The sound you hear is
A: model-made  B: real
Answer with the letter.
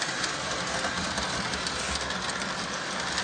A